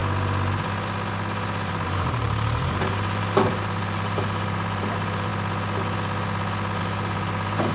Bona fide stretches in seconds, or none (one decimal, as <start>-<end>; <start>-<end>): 0.0-1.7; 5.3-6.8